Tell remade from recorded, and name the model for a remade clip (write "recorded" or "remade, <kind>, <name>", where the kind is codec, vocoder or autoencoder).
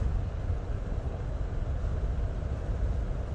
recorded